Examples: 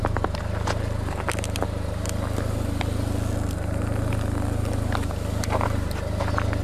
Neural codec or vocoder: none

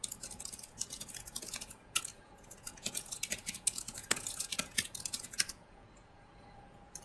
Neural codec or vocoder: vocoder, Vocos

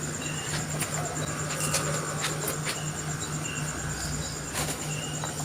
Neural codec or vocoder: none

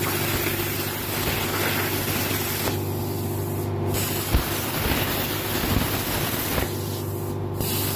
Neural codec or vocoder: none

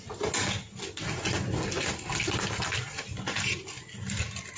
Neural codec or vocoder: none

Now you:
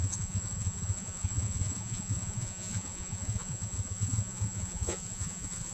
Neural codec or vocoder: vocoder, Vocos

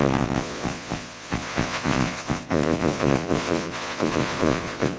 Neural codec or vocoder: vocoder, Vocos